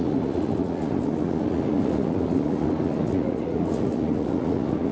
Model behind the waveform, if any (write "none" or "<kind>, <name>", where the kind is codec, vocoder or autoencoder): vocoder, Vocos